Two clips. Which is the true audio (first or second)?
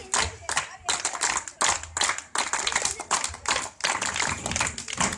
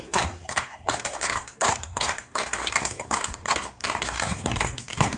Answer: first